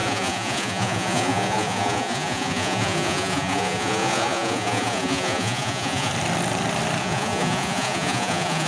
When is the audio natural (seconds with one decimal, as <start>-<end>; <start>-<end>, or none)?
6.1-7.0